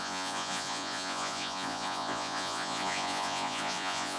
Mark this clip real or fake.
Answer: fake